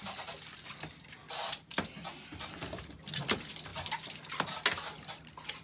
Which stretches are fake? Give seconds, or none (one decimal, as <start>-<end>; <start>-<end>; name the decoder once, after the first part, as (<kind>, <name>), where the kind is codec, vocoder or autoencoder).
none